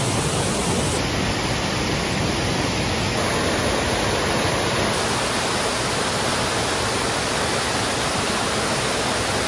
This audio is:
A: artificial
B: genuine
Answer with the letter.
B